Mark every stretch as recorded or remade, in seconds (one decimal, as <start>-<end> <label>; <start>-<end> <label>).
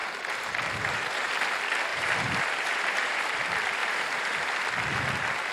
0.0-1.3 remade; 1.3-1.9 recorded; 1.9-3.4 remade; 3.4-3.8 recorded; 3.8-4.6 remade; 4.6-5.5 recorded